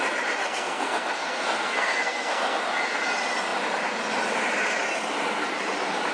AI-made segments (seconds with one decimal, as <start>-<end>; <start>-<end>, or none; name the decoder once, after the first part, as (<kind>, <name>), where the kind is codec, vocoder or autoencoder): 0.4-2.6 (codec, SNAC)